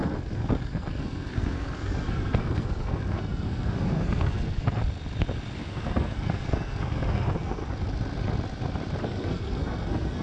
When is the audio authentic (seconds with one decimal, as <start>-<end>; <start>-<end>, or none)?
4.8-5.6; 7.6-9.0